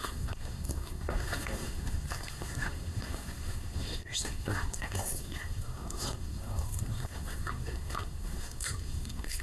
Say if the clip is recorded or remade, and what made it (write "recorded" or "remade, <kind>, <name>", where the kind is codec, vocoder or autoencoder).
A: remade, codec, SNAC